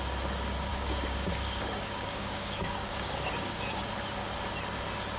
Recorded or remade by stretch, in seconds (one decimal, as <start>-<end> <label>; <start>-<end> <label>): 0.0-0.7 recorded; 0.7-3.8 remade; 3.8-5.2 recorded